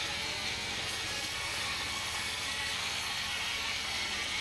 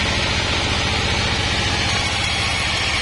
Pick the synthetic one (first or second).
first